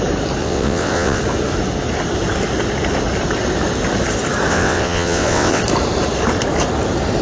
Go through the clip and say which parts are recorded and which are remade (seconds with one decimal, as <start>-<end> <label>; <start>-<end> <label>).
0.0-0.4 recorded; 0.4-1.2 remade; 1.2-4.5 recorded; 4.5-5.6 remade; 5.6-7.2 recorded